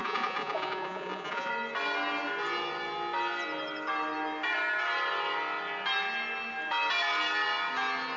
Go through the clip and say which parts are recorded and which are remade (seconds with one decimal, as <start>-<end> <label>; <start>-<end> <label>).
0.0-1.5 remade; 1.5-8.2 recorded

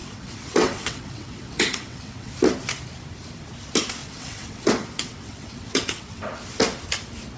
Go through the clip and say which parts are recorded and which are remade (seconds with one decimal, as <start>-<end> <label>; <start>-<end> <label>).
0.0-2.3 remade; 2.3-4.0 recorded; 4.0-6.4 remade; 6.4-7.4 recorded

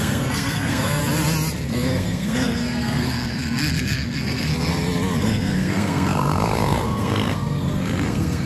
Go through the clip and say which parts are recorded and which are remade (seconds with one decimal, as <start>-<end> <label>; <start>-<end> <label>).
0.0-1.0 remade; 1.0-1.7 recorded; 1.7-4.5 remade; 4.5-5.2 recorded; 5.2-8.5 remade

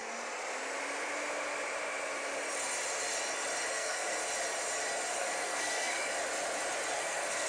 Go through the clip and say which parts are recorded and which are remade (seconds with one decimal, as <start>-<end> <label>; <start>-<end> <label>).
0.0-3.7 recorded; 3.7-4.2 remade; 4.2-5.1 recorded; 5.1-6.1 remade; 6.1-6.9 recorded; 6.9-7.5 remade

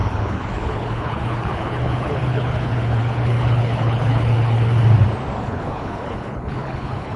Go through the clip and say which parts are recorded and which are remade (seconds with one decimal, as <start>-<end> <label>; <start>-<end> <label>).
0.0-4.7 remade; 4.7-5.4 recorded; 5.4-7.2 remade

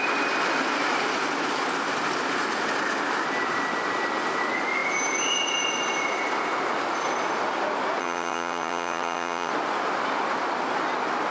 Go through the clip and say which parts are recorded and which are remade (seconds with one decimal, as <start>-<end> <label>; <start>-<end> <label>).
0.0-8.0 recorded; 8.0-9.5 remade; 9.5-11.3 recorded

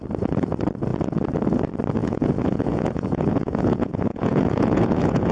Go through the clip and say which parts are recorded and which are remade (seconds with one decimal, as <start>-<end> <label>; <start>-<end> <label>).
0.0-2.0 recorded; 2.0-5.3 remade